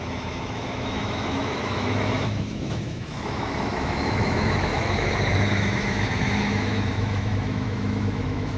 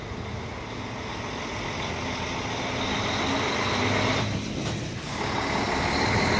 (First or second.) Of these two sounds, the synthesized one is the first